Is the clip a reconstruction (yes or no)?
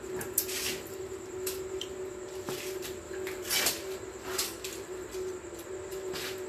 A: no